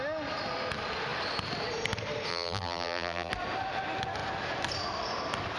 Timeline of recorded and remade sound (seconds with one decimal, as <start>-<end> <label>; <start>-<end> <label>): 0.0-2.3 recorded; 2.3-3.3 remade; 3.3-5.6 recorded